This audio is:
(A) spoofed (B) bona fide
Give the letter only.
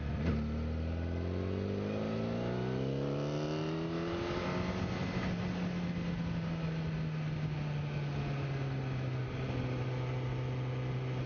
B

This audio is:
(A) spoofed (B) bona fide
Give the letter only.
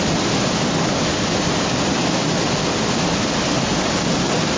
B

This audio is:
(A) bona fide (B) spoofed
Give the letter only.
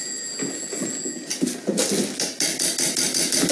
A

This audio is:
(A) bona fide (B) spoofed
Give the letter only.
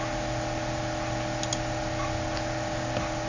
A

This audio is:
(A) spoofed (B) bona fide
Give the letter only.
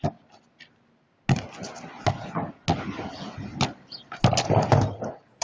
B